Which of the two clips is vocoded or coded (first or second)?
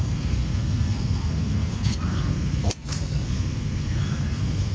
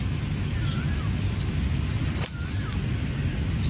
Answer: first